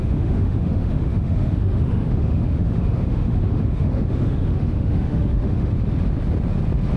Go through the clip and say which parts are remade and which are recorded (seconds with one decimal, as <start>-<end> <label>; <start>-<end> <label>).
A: 0.0-5.7 remade; 5.7-7.0 recorded